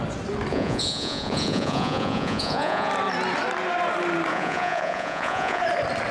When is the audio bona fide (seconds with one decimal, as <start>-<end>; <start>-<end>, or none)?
0.0-0.5; 2.9-4.3; 5.6-6.1